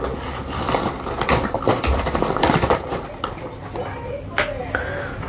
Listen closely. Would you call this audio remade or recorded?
recorded